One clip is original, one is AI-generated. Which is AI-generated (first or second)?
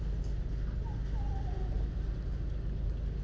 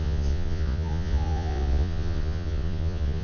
second